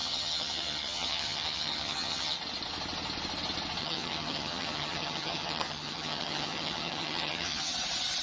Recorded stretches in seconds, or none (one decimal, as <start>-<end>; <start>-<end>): 2.4-3.8; 7.7-8.2